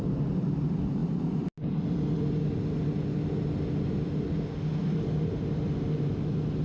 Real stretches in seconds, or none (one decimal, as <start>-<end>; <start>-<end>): 0.0-6.6